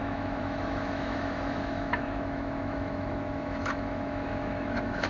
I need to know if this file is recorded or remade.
remade